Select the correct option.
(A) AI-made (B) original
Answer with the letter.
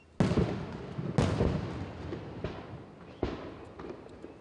B